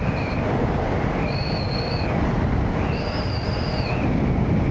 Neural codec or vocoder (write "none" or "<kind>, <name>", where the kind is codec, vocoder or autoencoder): none